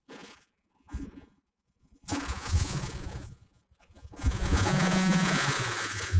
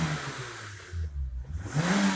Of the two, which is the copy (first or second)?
first